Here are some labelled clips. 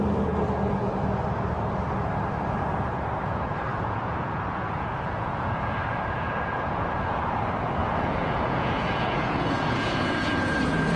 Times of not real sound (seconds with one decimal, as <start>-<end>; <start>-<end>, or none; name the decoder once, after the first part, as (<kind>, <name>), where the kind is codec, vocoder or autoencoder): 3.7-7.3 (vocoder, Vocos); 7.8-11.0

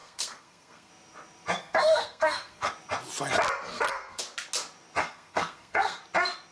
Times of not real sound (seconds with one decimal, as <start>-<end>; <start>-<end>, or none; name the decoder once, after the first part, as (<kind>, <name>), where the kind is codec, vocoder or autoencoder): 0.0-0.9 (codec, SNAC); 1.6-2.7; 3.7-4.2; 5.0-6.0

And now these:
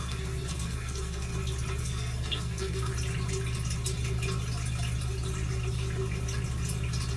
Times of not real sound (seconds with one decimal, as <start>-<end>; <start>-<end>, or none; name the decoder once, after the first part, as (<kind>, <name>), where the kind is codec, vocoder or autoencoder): 0.0-1.3 (codec, SNAC); 1.8-2.9

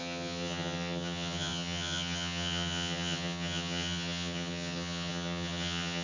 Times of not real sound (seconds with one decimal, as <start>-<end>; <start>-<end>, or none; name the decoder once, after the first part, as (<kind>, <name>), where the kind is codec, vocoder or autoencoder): 0.0-6.0 (vocoder, HiFi-GAN)

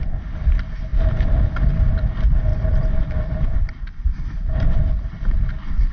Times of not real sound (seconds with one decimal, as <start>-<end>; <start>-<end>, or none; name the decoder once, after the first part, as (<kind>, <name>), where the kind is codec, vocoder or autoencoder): 0.9-1.5 (vocoder, BigVGAN v2); 2.5-5.3